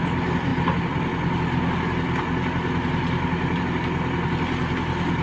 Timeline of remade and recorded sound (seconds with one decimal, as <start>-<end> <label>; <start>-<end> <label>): 0.0-5.2 recorded